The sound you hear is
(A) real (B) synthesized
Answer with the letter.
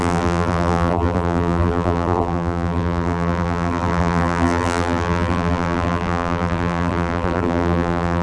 B